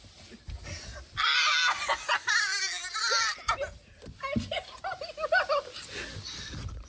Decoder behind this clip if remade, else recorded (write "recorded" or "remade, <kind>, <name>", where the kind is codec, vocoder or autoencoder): recorded